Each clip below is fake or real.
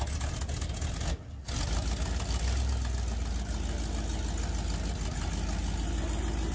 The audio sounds real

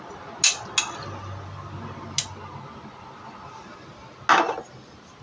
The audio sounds real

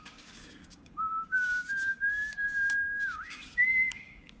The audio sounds fake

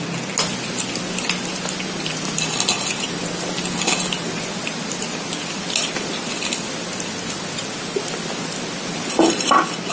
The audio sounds real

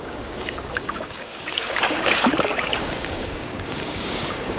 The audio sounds fake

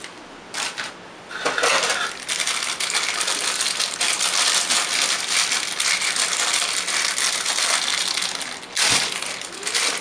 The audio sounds real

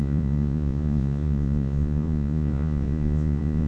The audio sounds fake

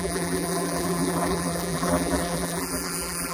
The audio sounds fake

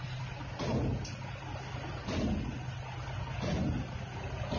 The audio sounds real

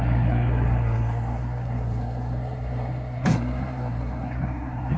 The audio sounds fake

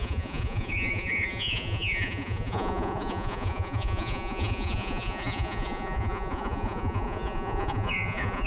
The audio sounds fake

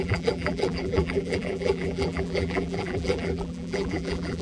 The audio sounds fake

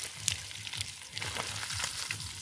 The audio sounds real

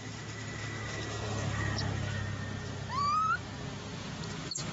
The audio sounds real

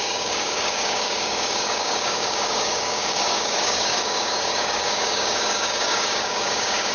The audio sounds fake